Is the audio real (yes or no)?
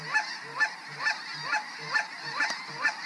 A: yes